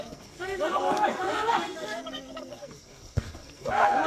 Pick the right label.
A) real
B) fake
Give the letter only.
B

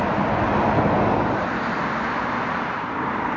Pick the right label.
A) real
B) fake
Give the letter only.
A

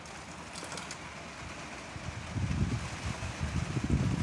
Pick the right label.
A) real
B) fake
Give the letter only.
A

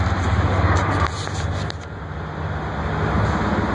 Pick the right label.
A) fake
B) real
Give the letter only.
B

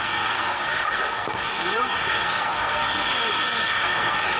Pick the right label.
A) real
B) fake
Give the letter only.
B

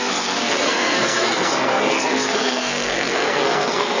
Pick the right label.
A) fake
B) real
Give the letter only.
A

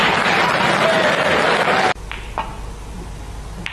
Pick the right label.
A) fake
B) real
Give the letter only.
B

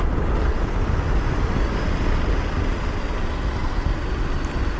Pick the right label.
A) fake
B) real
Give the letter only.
B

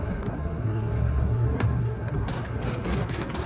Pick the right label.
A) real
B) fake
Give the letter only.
B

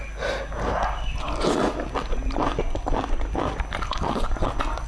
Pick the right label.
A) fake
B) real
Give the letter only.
B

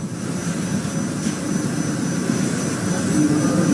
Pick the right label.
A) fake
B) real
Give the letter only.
B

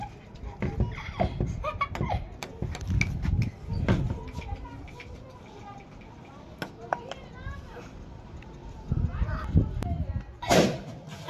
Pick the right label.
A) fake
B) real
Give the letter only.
B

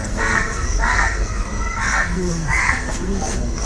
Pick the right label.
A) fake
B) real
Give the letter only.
A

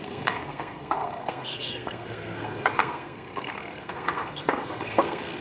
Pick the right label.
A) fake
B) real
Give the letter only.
A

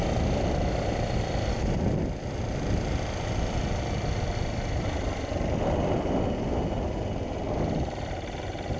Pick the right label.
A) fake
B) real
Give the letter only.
B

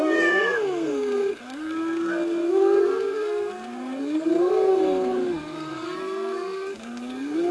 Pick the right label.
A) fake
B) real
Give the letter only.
A